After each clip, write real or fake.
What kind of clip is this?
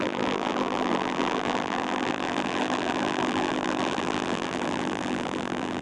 fake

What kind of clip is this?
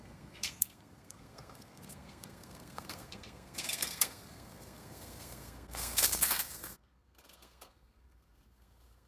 fake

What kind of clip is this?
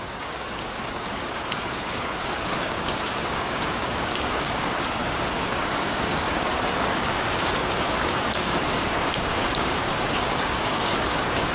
fake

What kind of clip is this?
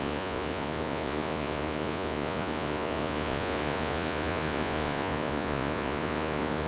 fake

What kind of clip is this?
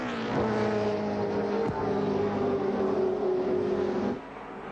real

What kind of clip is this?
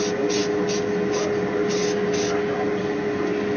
real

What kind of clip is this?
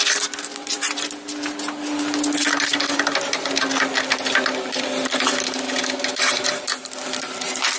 fake